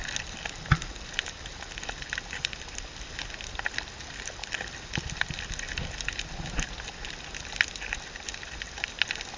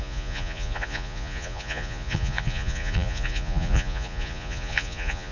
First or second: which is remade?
second